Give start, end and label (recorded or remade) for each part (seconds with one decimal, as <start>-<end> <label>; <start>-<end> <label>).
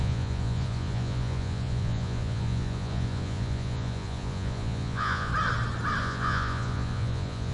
0.0-5.3 remade; 5.3-6.0 recorded; 6.0-7.5 remade